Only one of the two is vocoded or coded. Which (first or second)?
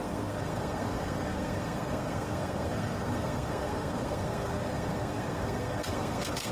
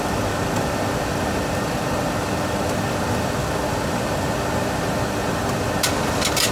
first